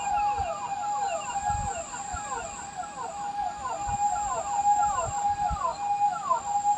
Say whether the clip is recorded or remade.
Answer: recorded